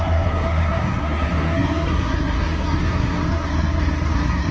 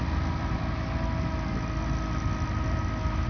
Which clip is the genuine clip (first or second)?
second